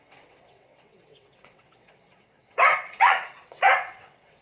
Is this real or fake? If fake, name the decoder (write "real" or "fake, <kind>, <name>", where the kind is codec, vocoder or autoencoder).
fake, vocoder, WaveNeXt